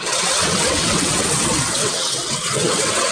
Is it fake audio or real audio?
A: fake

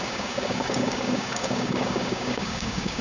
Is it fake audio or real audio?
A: fake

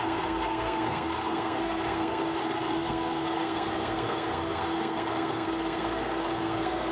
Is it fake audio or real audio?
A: fake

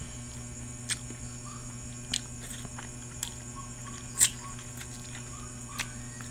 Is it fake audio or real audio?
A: real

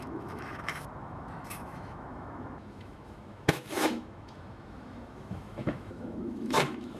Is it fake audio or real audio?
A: fake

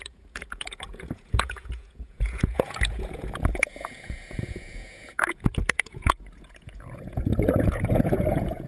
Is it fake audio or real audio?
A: fake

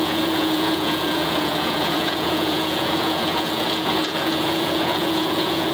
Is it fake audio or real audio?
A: fake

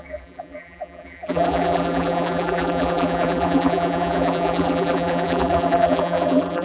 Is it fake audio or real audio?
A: fake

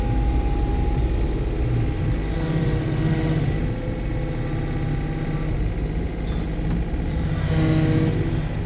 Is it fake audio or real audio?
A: real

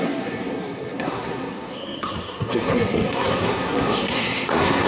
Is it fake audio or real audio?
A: fake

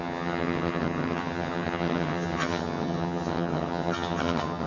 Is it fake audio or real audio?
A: fake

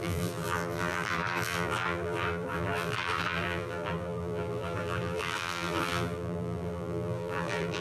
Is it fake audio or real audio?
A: fake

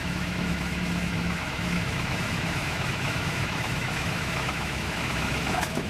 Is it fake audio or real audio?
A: fake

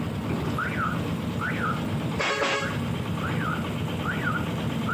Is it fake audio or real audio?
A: real